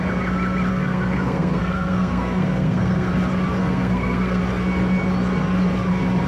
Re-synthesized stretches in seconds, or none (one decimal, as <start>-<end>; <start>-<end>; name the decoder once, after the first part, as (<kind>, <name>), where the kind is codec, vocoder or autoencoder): 0.7-3.1 (codec, SNAC); 3.6-4.4